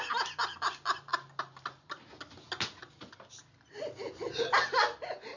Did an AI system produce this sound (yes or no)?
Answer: no